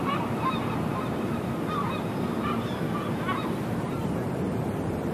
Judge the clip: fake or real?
fake